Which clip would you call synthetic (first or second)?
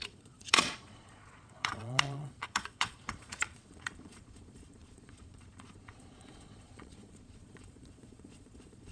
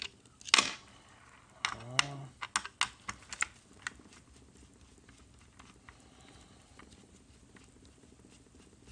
first